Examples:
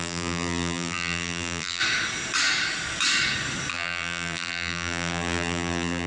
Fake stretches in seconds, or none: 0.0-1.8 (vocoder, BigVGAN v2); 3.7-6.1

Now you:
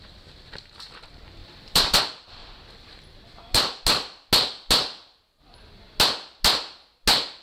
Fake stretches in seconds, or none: 1.4-2.0 (vocoder, BigVGAN v2)

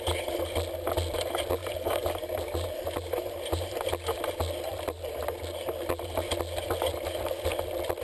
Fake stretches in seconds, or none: 1.6-3.9 (vocoder, BigVGAN v2); 4.7-5.4

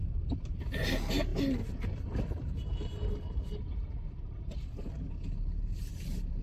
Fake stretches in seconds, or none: none

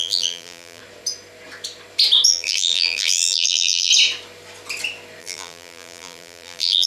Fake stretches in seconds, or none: 0.0-0.8 (vocoder, BigVGAN v2); 2.3-3.9; 5.2-6.9

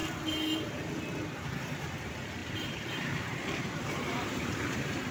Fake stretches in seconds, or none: 2.4-5.1 (vocoder, BigVGAN v2)

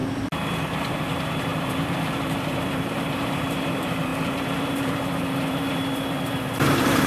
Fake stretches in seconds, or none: 0.9-7.1 (vocoder, BigVGAN v2)

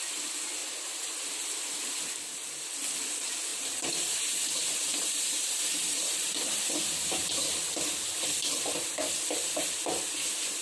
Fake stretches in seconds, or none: 0.6-2.0 (vocoder, BigVGAN v2); 3.5-7.8